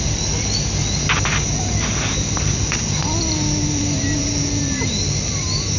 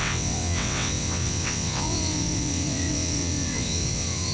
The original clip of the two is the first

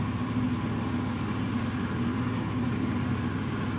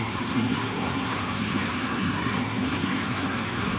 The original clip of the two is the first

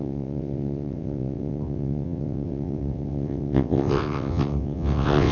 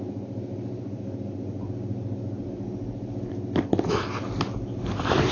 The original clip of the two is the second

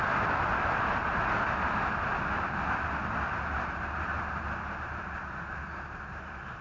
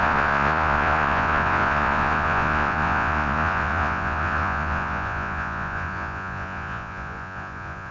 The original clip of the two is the first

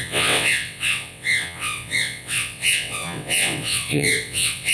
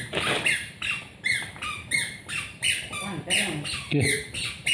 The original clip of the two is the second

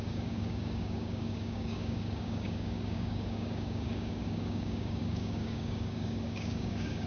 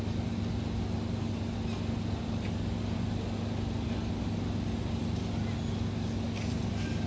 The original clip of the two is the second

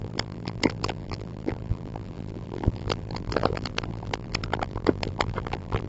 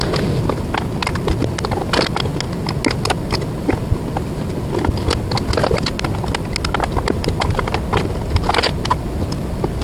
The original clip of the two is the second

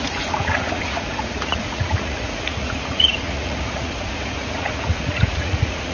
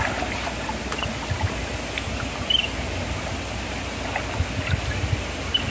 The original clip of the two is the second